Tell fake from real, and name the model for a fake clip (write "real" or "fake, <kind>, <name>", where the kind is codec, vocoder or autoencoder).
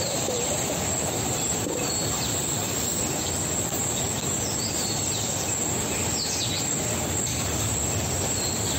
real